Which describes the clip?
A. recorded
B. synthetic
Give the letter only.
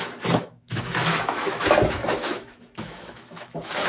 B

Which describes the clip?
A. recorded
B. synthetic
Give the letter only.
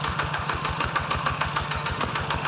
B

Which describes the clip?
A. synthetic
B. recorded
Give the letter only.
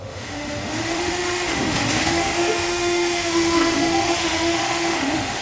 A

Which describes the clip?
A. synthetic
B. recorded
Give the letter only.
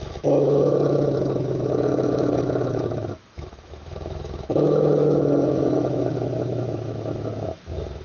A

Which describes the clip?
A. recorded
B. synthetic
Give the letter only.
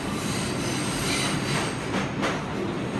A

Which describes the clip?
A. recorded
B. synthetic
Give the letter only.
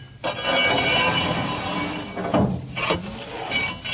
A